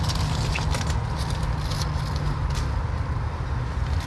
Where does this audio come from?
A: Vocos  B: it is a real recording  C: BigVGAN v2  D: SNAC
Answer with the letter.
B